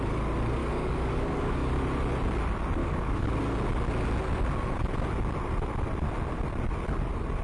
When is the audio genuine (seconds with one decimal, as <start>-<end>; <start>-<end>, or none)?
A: 0.0-0.6; 1.7-2.8; 3.4-7.4